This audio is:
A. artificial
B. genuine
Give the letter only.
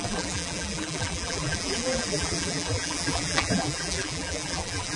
A